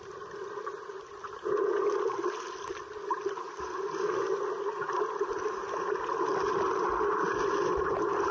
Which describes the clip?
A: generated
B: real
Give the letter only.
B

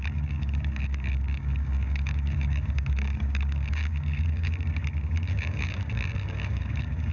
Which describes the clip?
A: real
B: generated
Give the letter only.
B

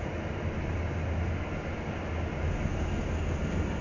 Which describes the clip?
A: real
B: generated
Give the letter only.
A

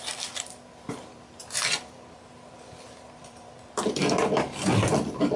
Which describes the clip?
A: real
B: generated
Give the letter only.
B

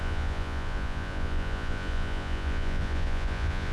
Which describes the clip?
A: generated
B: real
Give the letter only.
A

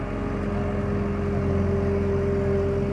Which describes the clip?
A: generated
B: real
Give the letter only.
B